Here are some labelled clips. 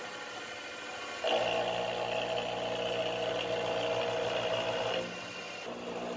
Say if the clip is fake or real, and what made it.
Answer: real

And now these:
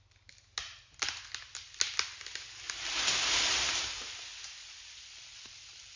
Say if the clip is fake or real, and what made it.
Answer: real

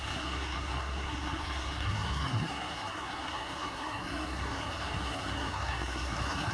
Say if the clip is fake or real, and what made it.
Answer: fake, codec, SNAC